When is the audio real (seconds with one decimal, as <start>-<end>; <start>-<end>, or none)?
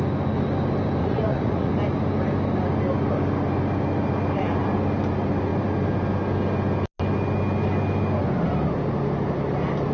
0.0-1.0; 1.7-9.9